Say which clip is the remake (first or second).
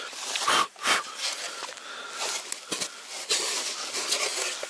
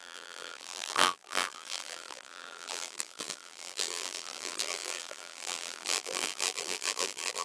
second